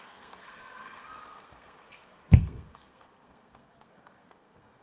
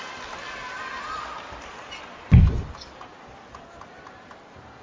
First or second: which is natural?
second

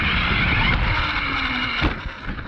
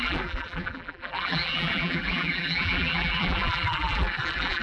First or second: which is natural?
first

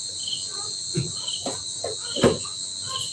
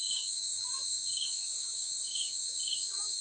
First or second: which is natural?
first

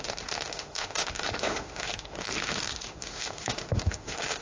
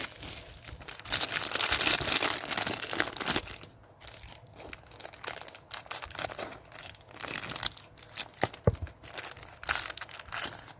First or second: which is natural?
second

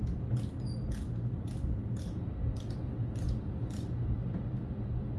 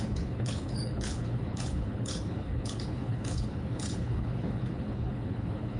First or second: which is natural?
first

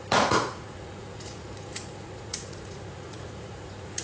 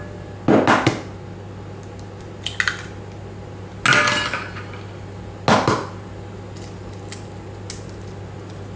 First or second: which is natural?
second